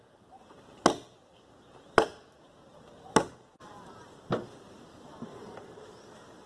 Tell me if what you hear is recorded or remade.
recorded